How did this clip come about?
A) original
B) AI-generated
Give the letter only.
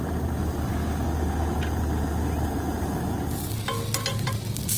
A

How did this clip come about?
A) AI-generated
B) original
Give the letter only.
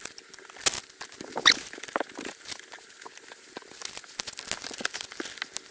B